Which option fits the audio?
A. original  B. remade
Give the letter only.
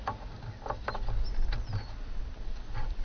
A